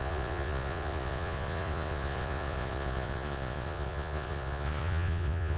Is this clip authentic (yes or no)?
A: no